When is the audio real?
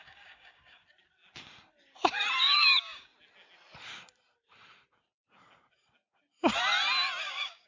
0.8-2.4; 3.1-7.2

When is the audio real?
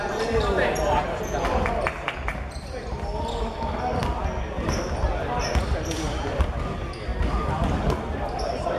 0.0-8.8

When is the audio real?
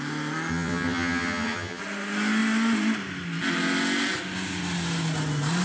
0.0-0.5; 1.8-5.6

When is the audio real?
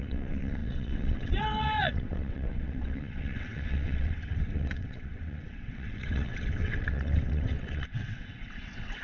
none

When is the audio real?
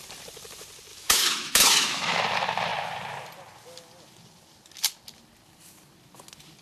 0.0-0.9; 2.2-6.6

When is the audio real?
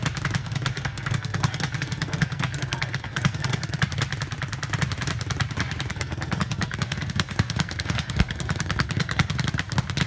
0.0-0.4; 3.8-5.9; 9.3-10.1